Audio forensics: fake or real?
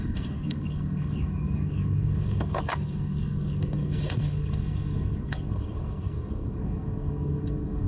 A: fake